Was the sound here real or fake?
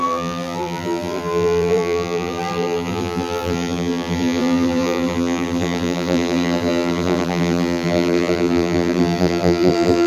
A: fake